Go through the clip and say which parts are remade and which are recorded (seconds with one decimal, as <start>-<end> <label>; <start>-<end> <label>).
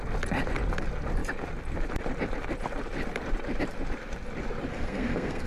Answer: 0.0-4.7 recorded; 4.7-5.5 remade